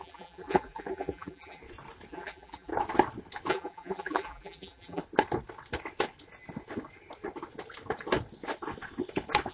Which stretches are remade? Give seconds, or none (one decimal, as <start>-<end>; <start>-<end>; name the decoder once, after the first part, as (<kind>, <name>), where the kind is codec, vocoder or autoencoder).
0.0-1.6 (vocoder, BigVGAN v2); 2.1-2.7; 3.5-5.0